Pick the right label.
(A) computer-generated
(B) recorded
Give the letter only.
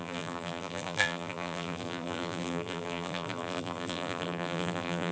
A